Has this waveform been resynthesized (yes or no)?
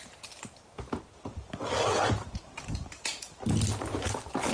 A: no